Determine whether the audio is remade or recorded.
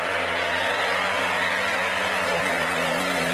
recorded